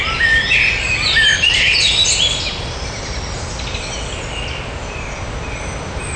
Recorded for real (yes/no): yes